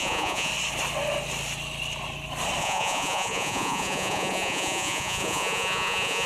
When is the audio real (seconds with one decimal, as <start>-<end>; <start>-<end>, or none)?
0.5-2.6